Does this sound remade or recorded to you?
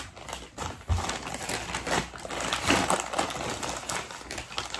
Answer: recorded